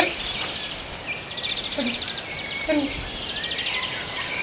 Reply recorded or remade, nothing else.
recorded